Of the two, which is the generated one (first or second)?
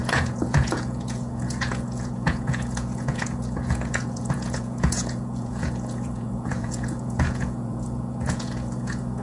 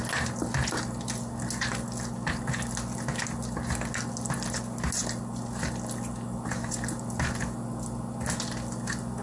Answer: first